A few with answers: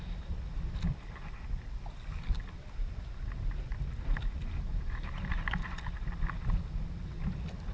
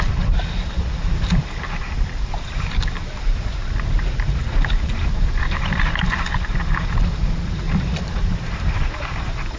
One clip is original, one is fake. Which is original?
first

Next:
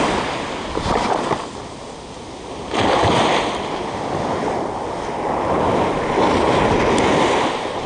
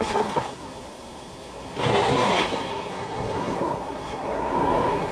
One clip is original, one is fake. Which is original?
first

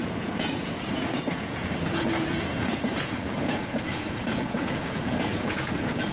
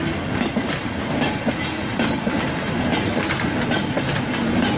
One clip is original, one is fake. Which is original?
second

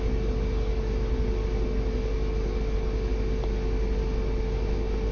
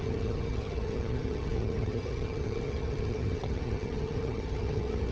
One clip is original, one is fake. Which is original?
first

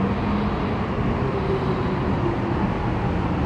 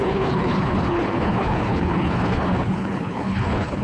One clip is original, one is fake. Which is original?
first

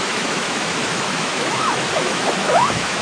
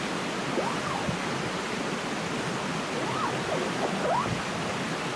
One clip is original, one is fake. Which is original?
second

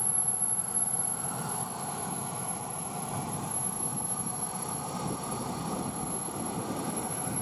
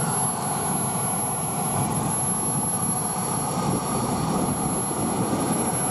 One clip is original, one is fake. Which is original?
second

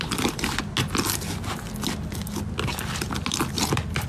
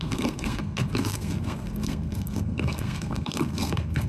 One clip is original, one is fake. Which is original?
first